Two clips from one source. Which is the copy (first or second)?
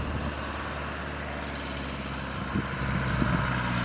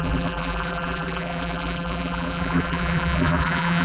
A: second